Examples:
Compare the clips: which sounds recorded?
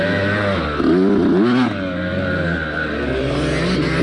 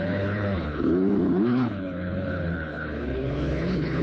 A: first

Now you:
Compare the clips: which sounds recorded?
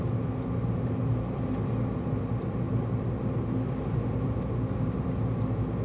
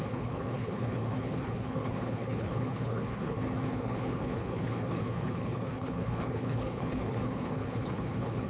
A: first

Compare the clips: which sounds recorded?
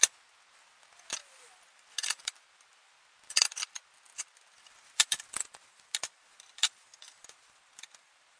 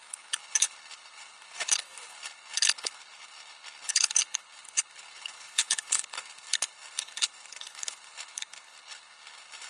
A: first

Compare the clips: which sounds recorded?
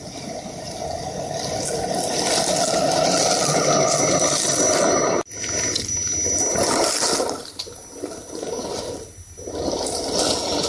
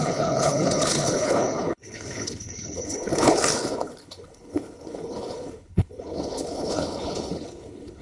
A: first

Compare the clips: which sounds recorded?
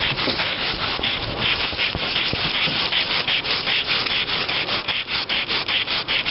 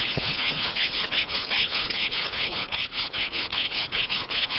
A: first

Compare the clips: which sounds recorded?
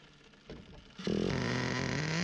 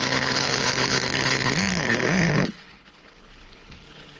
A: first